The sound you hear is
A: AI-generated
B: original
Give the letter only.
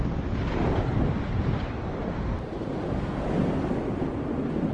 B